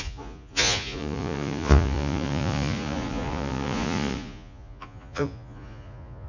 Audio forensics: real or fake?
fake